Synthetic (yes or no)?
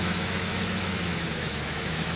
yes